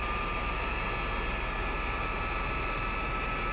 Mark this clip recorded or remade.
recorded